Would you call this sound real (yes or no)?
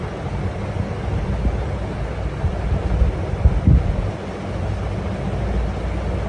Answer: yes